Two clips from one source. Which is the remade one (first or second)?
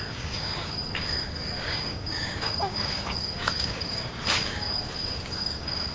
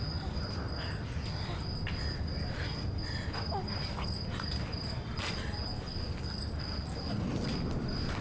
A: first